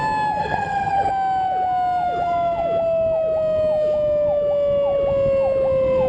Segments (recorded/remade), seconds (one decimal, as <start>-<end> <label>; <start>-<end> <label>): 0.0-0.4 recorded; 0.4-1.1 remade; 1.1-6.1 recorded